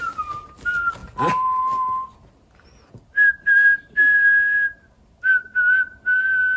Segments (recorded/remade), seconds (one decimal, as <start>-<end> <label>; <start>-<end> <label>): 0.0-6.6 recorded